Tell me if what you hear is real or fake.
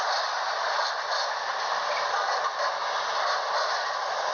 real